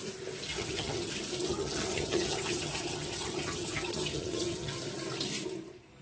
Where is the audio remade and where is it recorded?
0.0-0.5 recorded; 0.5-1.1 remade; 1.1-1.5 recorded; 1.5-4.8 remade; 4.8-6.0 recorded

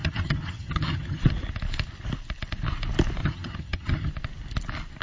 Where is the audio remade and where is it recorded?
0.0-1.3 remade; 1.3-3.2 recorded; 3.2-4.1 remade; 4.1-5.0 recorded

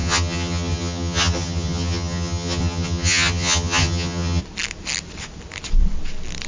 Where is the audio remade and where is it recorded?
0.0-4.4 remade; 4.4-6.5 recorded

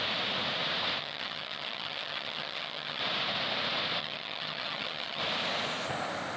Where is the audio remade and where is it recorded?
0.0-1.0 recorded; 1.0-3.0 remade; 3.0-4.0 recorded; 4.0-5.2 remade; 5.2-6.4 recorded